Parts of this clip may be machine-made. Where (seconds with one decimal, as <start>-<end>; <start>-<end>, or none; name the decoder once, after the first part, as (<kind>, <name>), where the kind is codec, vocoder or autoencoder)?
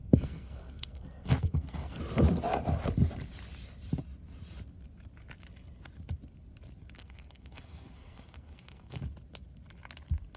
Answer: 0.0-2.0 (codec, SNAC); 7.0-9.0